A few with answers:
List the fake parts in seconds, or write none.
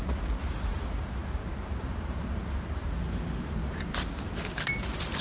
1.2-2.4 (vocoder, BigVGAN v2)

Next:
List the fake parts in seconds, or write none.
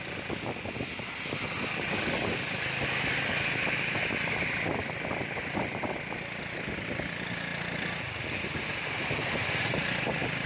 none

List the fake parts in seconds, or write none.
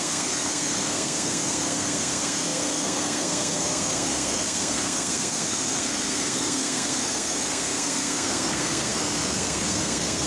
0.0-10.3 (codec, SNAC)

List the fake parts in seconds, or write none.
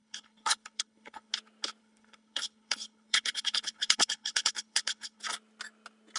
0.0-1.3 (codec, HILCodec); 1.8-5.2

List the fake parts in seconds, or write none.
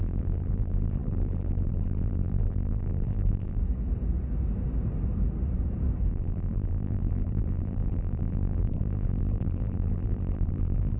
0.0-3.6 (vocoder, BigVGAN v2); 6.1-11.0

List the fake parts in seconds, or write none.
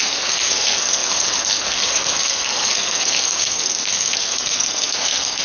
0.0-5.4 (codec, SNAC)